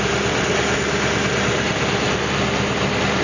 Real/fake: real